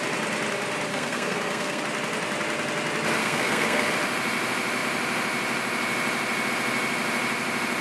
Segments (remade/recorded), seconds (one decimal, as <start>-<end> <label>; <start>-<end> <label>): 0.0-0.9 recorded; 0.9-1.8 remade; 1.8-3.2 recorded; 3.2-3.9 remade; 3.9-7.8 recorded